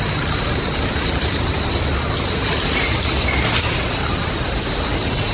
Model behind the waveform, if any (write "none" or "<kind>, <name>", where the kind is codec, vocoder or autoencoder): none